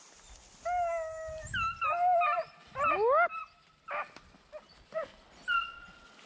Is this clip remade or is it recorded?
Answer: recorded